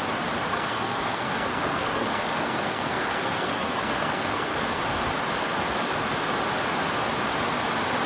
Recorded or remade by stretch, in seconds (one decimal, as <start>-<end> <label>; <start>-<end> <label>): 0.0-0.5 recorded; 0.5-4.8 remade; 4.8-8.1 recorded